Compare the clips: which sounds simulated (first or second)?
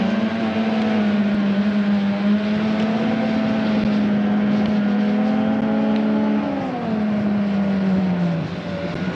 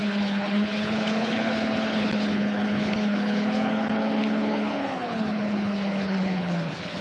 second